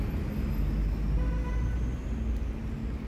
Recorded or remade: recorded